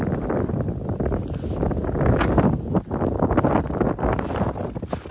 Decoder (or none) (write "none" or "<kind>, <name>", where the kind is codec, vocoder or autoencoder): none